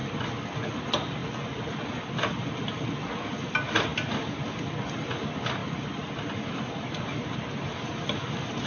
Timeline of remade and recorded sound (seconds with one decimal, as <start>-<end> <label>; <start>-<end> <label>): 0.0-8.7 recorded